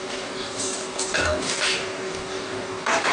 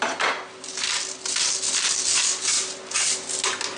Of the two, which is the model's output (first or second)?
first